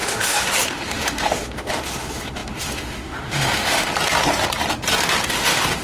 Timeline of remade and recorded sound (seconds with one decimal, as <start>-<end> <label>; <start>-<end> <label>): 0.0-3.9 remade; 3.9-5.3 recorded; 5.3-5.8 remade

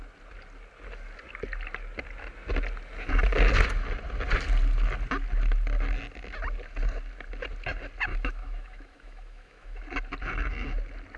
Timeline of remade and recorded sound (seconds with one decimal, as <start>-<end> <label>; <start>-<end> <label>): 0.0-8.1 recorded; 8.1-9.8 remade; 9.8-11.2 recorded

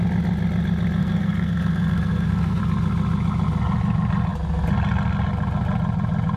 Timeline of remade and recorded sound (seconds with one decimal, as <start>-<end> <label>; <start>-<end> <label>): 0.0-1.0 recorded; 1.0-2.6 remade; 2.6-6.4 recorded